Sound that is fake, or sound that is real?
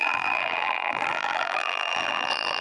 fake